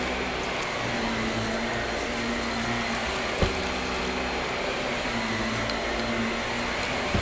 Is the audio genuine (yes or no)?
yes